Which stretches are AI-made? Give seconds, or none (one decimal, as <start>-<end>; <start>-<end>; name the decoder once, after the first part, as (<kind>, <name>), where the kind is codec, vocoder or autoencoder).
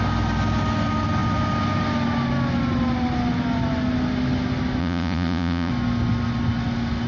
4.8-5.7 (vocoder, Vocos)